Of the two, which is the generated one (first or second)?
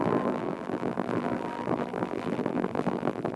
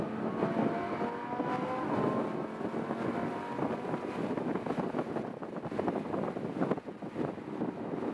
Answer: first